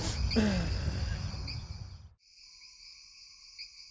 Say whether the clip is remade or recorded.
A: recorded